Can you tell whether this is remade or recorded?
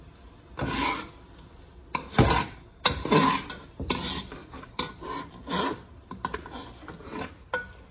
recorded